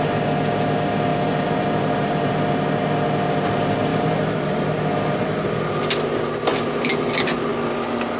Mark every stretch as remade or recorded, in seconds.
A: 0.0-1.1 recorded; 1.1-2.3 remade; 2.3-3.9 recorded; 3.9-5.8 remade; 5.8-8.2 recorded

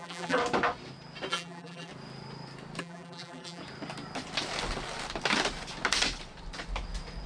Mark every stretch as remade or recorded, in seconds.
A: 0.0-0.4 remade; 0.4-1.3 recorded; 1.3-1.9 remade; 1.9-2.8 recorded; 2.8-3.6 remade; 3.6-7.3 recorded

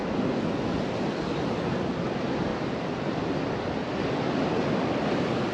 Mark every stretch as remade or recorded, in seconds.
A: 0.0-5.5 recorded